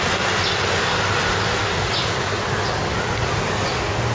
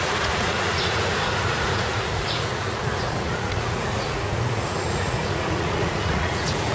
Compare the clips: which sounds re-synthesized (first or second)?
second